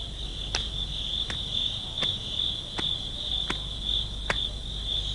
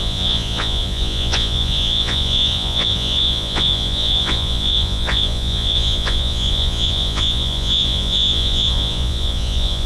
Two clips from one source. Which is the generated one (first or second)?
second